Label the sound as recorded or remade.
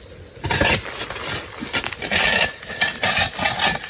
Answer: recorded